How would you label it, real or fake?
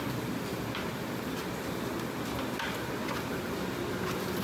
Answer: real